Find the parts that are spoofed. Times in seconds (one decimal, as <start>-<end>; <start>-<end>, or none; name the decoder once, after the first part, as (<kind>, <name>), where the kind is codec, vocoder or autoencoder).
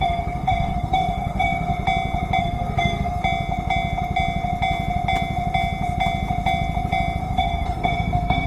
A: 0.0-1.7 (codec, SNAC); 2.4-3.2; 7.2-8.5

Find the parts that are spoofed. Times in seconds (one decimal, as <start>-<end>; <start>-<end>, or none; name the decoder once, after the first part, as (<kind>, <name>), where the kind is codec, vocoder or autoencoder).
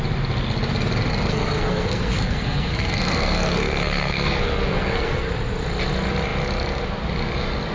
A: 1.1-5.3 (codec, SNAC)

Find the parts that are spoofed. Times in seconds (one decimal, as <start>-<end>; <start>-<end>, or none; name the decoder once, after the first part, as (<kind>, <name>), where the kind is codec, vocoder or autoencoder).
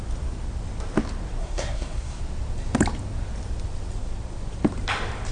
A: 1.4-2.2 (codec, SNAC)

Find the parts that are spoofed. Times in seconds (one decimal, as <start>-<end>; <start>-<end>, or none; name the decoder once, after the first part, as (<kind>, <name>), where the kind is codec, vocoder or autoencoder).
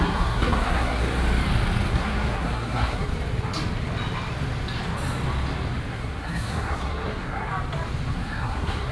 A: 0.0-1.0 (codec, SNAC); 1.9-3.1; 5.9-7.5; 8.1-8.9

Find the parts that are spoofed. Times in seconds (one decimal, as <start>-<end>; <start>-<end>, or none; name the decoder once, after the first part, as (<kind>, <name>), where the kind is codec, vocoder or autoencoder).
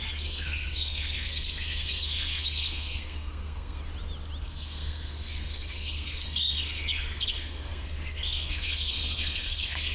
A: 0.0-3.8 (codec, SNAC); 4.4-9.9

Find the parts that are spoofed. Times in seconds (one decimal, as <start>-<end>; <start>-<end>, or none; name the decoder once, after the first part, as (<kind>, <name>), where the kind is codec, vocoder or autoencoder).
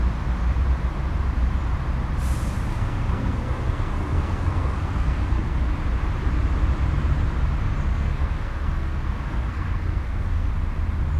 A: 2.7-5.7 (codec, SNAC); 7.9-10.5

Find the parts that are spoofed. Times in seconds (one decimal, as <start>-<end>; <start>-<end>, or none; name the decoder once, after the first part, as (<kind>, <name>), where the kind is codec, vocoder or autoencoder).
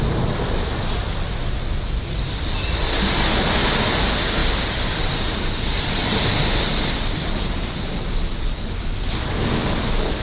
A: none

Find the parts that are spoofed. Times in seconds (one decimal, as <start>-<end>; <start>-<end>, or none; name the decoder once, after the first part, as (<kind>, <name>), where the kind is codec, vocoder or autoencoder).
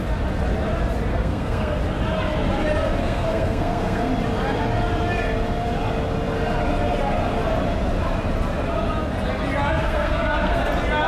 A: 1.1-1.8 (codec, SNAC); 3.0-4.1; 9.8-10.6